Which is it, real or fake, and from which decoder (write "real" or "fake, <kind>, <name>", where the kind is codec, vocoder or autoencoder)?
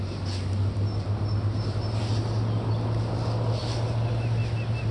real